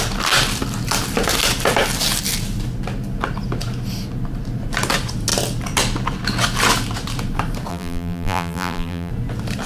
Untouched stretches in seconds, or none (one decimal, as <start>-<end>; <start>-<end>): 0.0-7.7; 9.1-9.7